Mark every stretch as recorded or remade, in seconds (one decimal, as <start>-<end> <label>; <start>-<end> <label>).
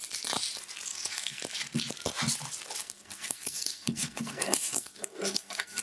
0.0-0.9 recorded; 0.9-1.4 remade; 1.4-2.8 recorded; 2.8-5.8 remade